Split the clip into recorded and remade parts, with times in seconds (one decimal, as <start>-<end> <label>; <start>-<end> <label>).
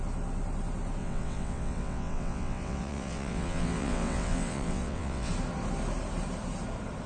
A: 0.0-1.0 recorded; 1.0-5.3 remade; 5.3-7.1 recorded